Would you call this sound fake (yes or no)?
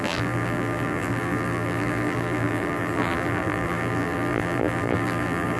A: yes